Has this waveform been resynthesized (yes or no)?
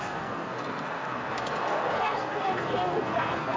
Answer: yes